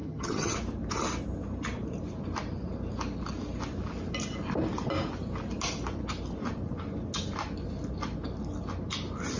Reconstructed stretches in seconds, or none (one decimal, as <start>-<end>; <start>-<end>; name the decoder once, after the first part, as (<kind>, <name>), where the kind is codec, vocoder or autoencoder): 0.0-0.5 (vocoder, HiFi-GAN)